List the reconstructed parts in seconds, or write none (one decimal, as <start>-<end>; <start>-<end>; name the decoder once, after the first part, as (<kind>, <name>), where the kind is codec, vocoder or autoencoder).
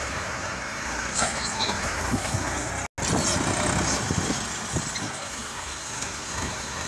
0.0-2.7 (codec, SNAC); 5.0-6.9